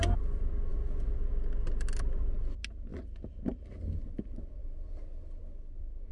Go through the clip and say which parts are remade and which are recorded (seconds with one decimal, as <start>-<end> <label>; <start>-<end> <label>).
0.0-6.1 recorded